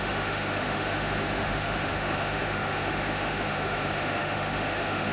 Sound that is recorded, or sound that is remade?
remade